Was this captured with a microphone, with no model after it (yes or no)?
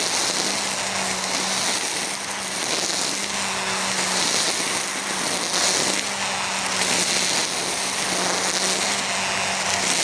yes